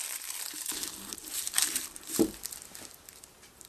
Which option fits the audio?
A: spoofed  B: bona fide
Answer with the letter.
A